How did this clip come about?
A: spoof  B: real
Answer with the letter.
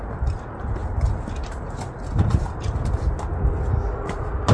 B